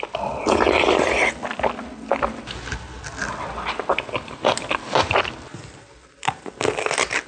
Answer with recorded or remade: recorded